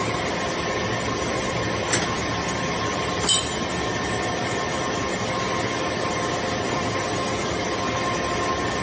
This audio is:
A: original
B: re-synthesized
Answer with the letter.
A